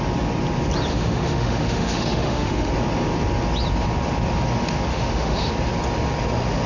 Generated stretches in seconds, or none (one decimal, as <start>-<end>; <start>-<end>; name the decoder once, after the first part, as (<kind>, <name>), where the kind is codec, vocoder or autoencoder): 0.9-2.7 (autoencoder, DAC-VAE); 4.9-5.5